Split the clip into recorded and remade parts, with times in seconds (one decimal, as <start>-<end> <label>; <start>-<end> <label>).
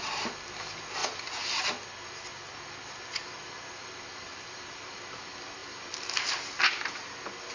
0.0-4.3 recorded; 4.3-5.0 remade; 5.0-5.6 recorded; 5.6-6.5 remade; 6.5-7.5 recorded